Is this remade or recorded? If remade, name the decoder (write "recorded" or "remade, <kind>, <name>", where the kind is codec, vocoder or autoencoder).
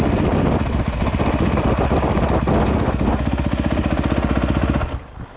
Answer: recorded